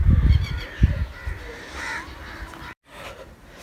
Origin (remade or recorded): remade